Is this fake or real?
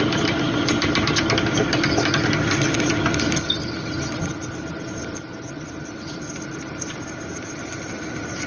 real